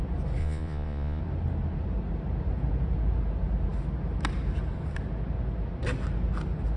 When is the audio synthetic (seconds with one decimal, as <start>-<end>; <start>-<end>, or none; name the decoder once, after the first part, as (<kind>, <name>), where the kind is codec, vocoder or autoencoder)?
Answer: 0.4-1.2 (vocoder, Vocos)